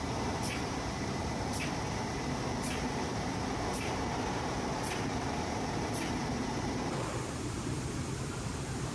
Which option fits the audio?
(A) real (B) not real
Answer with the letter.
B